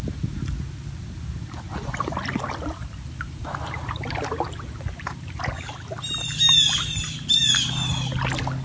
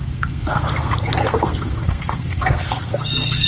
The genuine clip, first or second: first